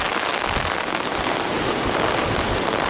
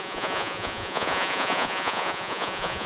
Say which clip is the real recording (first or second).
first